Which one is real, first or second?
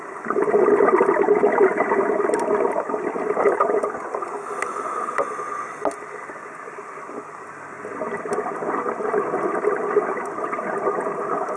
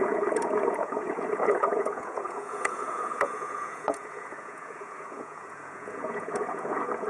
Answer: first